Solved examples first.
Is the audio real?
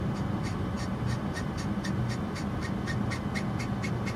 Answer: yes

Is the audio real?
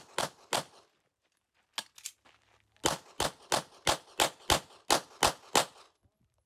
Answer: yes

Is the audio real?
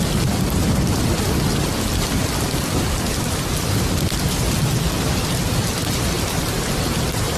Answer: yes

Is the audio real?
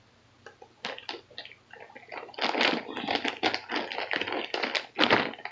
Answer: yes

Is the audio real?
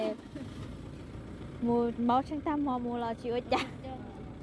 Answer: yes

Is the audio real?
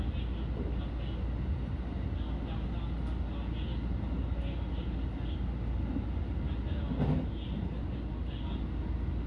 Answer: yes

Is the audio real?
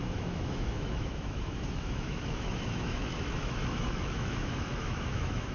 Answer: no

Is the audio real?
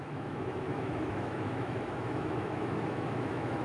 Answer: no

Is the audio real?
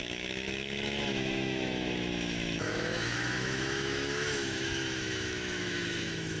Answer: no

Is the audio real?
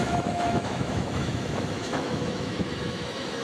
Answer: no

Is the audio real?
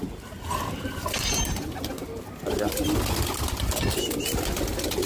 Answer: yes